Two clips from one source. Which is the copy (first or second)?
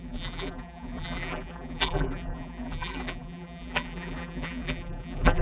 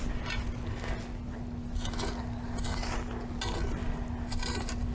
first